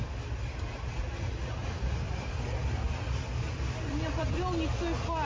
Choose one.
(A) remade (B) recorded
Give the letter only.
B